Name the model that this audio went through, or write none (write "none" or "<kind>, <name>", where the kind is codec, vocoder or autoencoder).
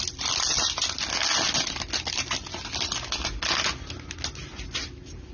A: none